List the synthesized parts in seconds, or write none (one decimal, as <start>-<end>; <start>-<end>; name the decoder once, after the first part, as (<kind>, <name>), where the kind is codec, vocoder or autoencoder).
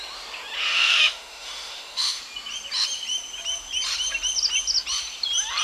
0.7-2.2 (autoencoder, DAC-VAE)